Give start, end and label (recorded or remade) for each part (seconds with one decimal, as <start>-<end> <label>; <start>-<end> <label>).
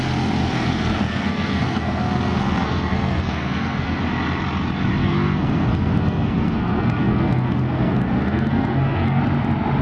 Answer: 0.0-0.4 recorded; 0.4-4.0 remade; 4.0-5.0 recorded; 5.0-9.2 remade; 9.2-9.8 recorded